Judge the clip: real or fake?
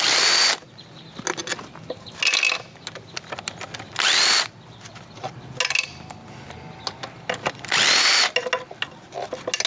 real